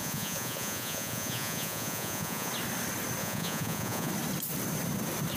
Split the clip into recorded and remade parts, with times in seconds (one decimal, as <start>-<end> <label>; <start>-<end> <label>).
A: 0.0-2.5 remade; 2.5-3.2 recorded; 3.2-4.1 remade; 4.1-5.4 recorded